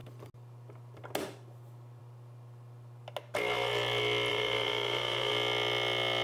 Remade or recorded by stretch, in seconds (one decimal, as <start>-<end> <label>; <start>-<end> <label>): 0.0-4.3 recorded; 4.3-5.3 remade; 5.3-6.2 recorded